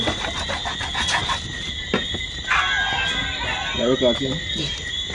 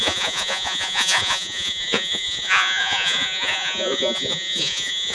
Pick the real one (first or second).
first